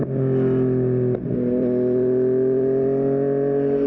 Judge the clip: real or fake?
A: real